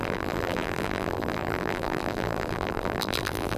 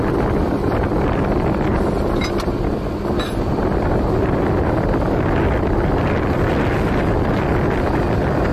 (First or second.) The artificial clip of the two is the first